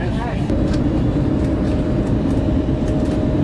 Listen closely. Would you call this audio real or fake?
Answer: real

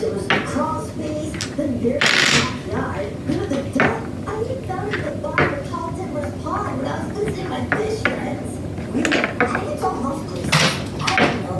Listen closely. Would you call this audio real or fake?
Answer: real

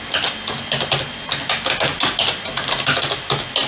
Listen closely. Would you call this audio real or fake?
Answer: real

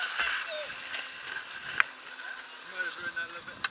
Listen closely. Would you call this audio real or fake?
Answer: real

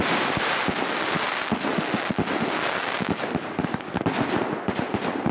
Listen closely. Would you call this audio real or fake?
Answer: real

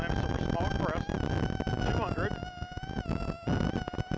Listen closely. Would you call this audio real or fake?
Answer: real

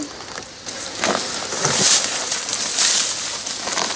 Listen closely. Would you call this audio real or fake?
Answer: real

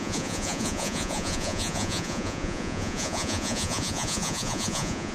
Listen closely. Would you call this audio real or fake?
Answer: fake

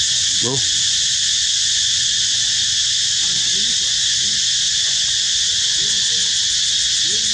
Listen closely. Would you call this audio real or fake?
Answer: fake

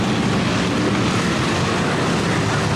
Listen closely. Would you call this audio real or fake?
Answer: real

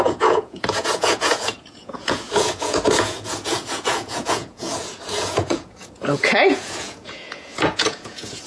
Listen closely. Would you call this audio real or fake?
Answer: fake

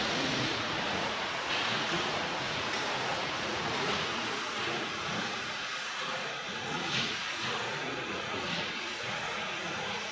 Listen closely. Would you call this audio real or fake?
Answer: fake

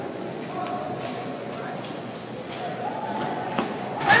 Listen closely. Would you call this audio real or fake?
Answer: fake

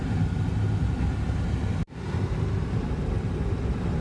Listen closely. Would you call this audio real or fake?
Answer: real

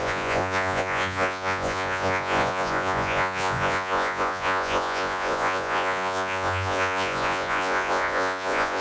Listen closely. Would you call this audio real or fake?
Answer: fake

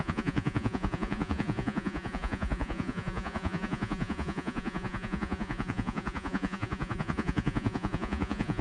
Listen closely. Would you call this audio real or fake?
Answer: fake